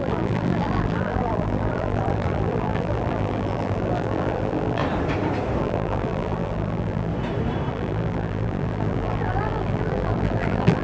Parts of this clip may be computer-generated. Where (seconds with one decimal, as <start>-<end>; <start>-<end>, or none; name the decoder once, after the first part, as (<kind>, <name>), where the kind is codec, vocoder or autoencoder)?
0.0-4.8 (vocoder, BigVGAN v2); 5.6-7.1; 7.7-10.8